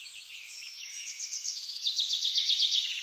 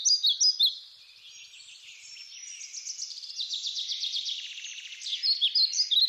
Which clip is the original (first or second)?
second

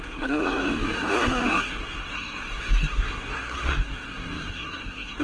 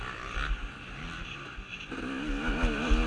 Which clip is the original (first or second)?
second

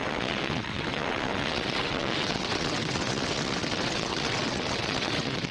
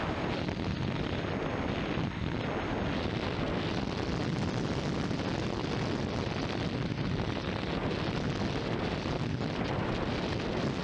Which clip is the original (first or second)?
second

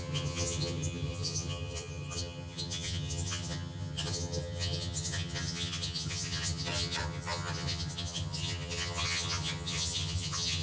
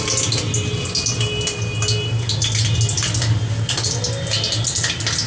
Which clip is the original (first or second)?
second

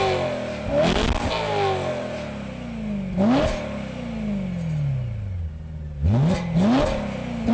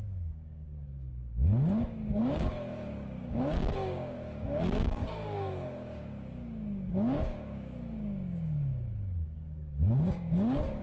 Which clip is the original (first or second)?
first